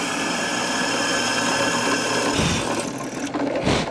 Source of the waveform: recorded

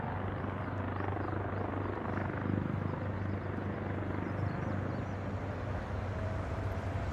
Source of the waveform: recorded